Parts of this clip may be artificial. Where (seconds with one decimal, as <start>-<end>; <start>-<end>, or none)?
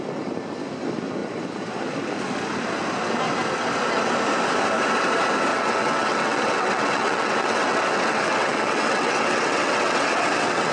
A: 5.5-10.7